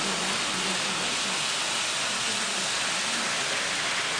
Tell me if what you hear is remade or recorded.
recorded